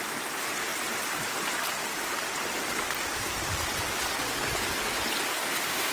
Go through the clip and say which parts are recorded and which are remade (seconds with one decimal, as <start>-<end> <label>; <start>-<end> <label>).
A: 0.0-5.3 recorded; 5.3-5.9 remade